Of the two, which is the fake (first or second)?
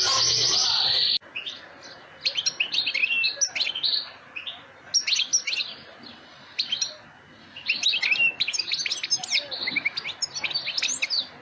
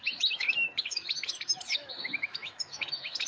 second